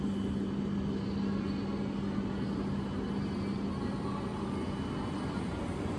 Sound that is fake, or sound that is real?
real